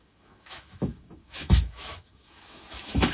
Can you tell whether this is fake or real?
fake